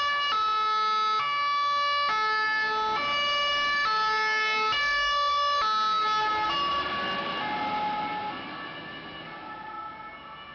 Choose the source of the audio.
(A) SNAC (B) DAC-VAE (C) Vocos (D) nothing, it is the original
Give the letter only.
D